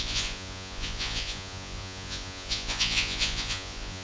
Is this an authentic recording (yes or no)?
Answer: no